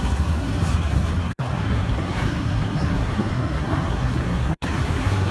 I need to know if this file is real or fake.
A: fake